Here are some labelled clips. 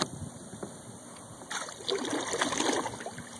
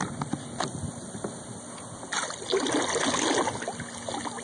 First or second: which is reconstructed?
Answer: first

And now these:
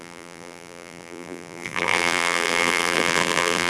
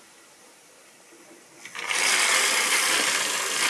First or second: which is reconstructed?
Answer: first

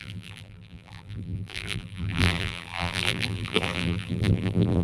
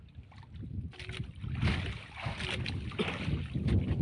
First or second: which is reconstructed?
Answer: first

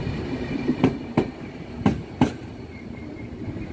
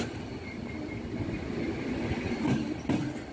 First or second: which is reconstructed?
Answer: first